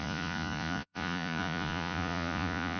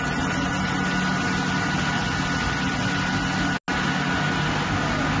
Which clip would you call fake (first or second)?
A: first